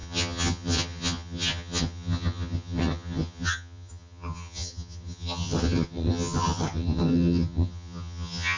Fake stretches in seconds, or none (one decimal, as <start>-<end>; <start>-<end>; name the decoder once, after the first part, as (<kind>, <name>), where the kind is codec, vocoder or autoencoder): 0.0-8.6 (vocoder, HiFi-GAN)